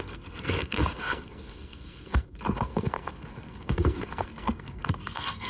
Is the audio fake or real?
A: fake